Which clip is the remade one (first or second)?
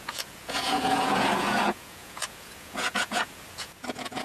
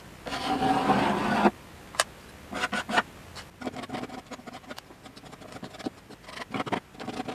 first